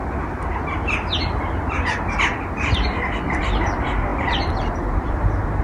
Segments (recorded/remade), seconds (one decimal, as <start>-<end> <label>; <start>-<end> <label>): 0.0-3.4 recorded; 3.4-5.6 remade